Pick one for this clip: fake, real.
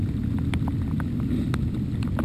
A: real